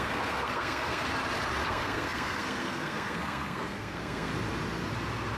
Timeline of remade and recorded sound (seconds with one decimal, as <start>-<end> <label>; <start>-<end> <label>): 0.0-1.0 remade; 1.0-1.7 recorded; 1.7-4.3 remade; 4.3-5.4 recorded